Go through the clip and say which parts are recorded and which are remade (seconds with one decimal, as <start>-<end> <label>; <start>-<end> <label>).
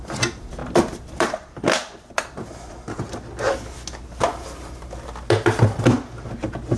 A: 0.0-0.6 recorded; 0.6-2.5 remade; 2.5-6.8 recorded